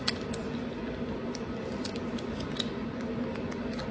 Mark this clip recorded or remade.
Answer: recorded